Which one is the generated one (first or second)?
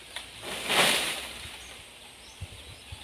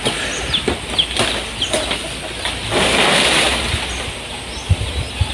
first